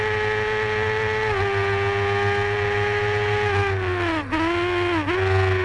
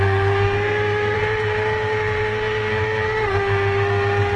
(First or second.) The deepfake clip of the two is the second